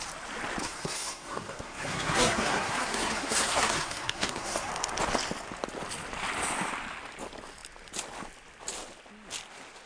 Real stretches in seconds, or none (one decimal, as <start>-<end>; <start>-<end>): 0.0-0.6; 4.7-9.9

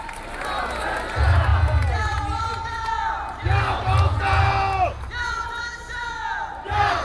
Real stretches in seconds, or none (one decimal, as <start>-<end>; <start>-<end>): 0.0-7.0

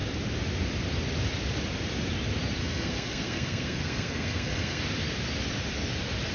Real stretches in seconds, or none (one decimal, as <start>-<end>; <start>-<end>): 0.0-2.6; 4.8-6.3

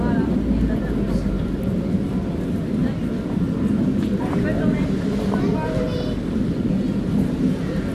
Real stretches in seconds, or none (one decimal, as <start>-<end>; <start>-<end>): 0.0-7.9